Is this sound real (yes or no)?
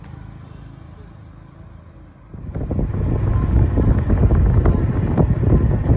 yes